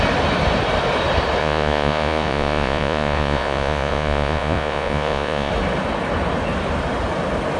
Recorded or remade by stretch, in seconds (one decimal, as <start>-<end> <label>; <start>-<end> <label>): 0.0-1.4 recorded; 1.4-5.5 remade; 5.5-7.6 recorded